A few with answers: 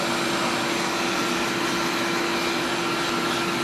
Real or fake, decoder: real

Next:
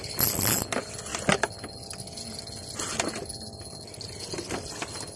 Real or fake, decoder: real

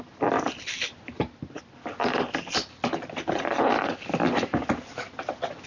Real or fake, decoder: real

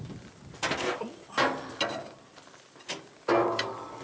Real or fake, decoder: real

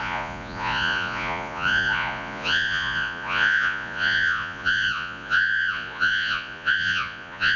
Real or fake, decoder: fake, vocoder, Vocos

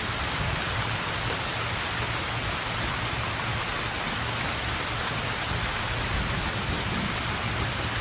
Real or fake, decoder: real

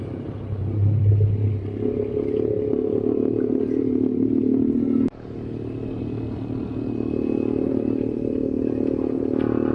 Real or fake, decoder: real